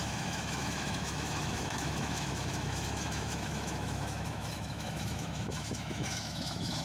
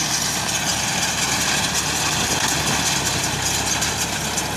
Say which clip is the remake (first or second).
first